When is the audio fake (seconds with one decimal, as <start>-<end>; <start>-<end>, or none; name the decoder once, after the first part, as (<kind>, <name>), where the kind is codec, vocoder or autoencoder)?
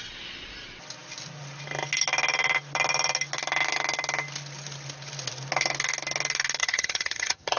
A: 6.6-7.6 (vocoder, HiFi-GAN)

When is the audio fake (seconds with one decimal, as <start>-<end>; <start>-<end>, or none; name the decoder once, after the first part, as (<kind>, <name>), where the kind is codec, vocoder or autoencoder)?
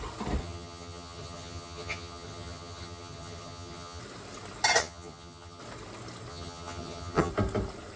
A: 0.4-4.0 (vocoder, HiFi-GAN); 4.8-5.6; 6.3-7.3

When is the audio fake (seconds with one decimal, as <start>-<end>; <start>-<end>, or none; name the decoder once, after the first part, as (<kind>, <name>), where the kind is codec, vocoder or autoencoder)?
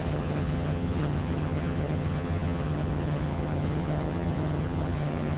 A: 0.0-5.4 (vocoder, HiFi-GAN)